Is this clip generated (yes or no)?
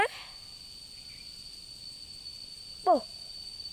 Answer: no